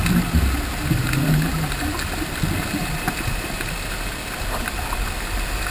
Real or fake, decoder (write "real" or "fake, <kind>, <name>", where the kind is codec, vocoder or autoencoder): real